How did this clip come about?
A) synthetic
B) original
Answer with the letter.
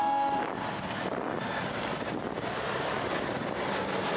B